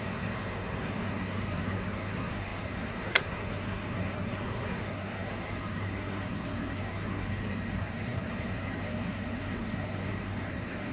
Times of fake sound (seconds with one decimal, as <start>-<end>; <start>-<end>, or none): 0.0-10.9